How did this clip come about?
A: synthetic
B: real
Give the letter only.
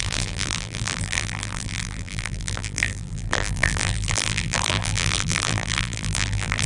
A